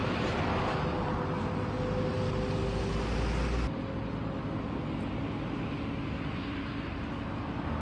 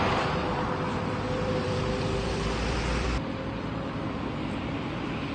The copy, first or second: second